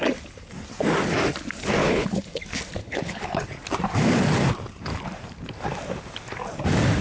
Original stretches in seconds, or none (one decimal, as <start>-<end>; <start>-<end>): 0.0-1.8; 2.4-2.8; 3.4-7.0